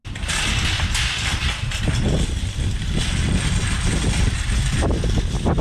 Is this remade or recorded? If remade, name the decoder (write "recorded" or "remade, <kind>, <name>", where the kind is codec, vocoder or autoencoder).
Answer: recorded